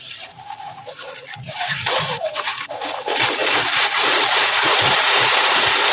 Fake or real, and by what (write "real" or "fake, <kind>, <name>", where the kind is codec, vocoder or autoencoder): fake, vocoder, Vocos